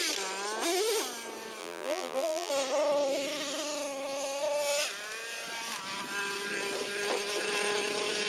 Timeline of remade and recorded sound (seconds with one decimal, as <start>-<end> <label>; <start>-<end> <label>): 0.0-1.6 recorded; 1.6-2.5 remade; 2.5-8.3 recorded